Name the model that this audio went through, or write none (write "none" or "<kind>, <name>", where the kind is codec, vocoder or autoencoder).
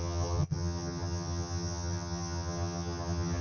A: vocoder, HiFi-GAN